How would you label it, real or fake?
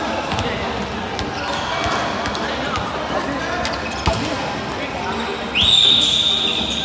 real